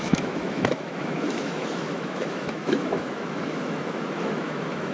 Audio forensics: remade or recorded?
remade